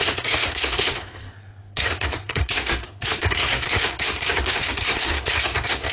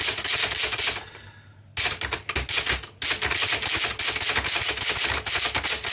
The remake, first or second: first